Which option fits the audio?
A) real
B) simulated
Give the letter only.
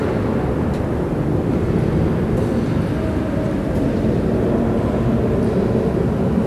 A